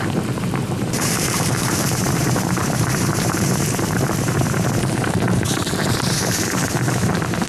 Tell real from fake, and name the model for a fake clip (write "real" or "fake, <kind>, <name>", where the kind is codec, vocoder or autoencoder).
fake, vocoder, BigVGAN v2